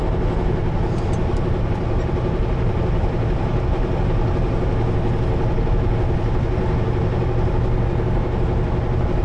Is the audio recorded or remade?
recorded